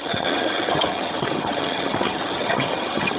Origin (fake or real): fake